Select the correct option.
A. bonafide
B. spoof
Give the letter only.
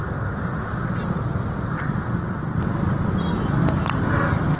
A